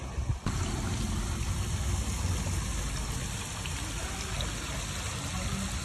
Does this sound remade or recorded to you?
recorded